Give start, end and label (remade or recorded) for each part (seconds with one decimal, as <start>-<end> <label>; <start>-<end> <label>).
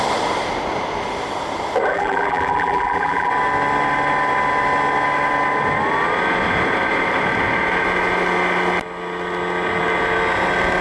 0.0-1.9 recorded; 1.9-3.3 remade; 3.3-10.8 recorded